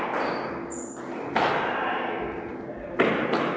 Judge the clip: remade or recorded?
recorded